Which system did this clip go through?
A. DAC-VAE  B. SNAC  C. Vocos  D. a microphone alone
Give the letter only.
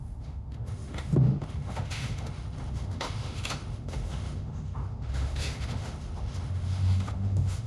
A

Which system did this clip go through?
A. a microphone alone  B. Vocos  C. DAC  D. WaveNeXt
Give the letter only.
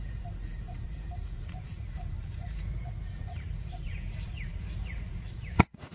B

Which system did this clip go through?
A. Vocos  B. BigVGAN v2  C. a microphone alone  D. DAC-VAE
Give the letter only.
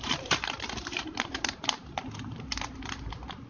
C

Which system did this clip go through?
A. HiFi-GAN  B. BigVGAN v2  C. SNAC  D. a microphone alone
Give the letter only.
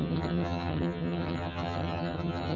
A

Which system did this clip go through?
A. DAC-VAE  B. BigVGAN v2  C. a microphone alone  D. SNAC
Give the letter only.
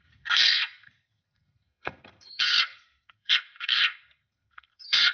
D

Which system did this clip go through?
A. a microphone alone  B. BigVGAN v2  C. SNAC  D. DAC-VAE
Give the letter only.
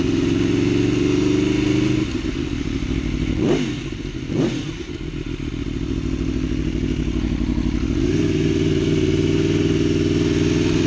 A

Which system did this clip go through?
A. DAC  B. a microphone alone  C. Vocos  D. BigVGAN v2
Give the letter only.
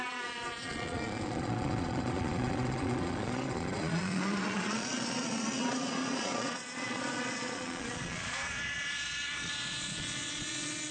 C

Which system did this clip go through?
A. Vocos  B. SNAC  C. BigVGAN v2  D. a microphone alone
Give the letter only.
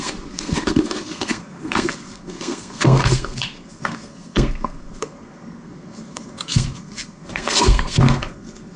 B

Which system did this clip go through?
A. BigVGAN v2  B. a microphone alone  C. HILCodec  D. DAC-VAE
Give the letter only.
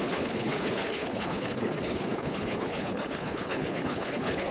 C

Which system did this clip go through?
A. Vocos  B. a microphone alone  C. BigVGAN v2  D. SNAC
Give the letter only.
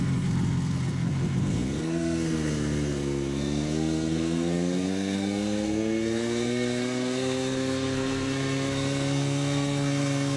D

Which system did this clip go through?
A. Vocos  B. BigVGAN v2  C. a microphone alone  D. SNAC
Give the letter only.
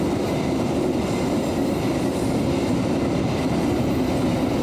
C